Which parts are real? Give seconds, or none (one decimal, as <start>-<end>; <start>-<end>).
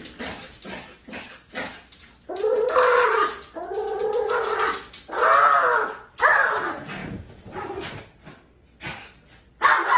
0.0-7.0; 8.0-10.0